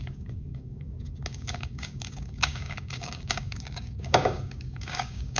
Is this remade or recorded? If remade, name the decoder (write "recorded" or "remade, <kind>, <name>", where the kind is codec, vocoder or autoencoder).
remade, codec, DAC